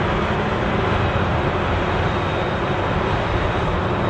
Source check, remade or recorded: recorded